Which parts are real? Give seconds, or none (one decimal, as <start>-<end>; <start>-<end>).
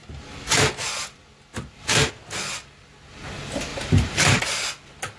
0.0-1.5; 2.1-3.7; 4.4-5.2